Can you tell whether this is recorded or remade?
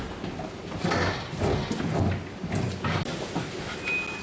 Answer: recorded